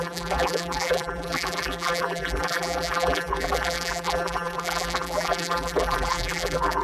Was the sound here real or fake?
fake